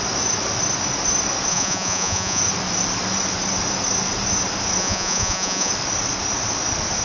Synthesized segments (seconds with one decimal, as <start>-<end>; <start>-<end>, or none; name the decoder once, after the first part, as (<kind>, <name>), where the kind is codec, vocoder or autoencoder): 1.5-2.4 (vocoder, Vocos); 4.8-5.7